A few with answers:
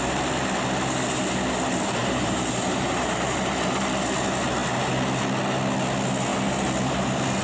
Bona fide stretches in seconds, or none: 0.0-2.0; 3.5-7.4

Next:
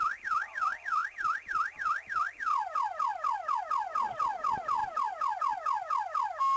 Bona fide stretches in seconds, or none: 0.0-6.6